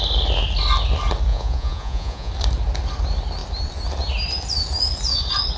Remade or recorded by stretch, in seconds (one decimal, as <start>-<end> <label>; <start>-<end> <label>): 0.0-1.3 recorded; 1.3-2.3 remade; 2.3-5.6 recorded